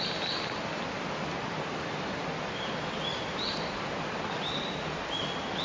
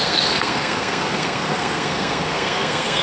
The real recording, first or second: first